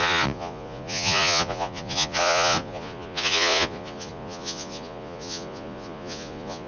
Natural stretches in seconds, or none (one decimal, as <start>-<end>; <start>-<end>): none